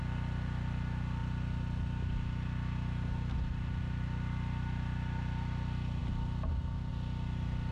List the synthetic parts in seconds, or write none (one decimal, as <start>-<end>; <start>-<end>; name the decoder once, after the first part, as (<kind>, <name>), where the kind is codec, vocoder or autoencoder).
none